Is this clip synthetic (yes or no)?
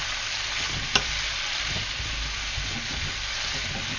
no